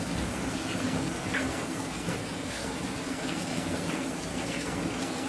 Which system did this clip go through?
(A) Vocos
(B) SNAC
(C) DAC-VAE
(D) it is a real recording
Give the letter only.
B